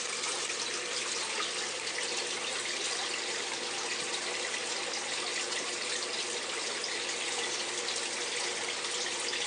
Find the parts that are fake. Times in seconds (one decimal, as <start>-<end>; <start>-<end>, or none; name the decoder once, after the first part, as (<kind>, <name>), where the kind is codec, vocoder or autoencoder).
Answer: none